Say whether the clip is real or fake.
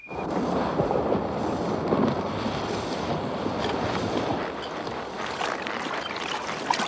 real